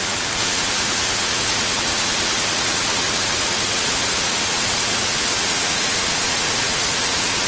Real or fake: fake